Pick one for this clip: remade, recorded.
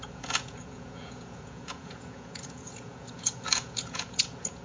remade